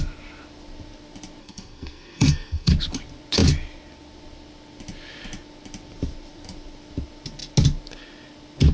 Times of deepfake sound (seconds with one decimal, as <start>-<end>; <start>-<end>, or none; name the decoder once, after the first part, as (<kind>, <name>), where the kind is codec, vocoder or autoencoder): 1.4-2.7 (codec, SNAC)